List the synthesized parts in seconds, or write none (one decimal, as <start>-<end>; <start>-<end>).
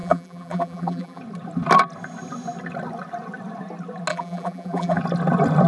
0.0-1.2; 4.1-5.0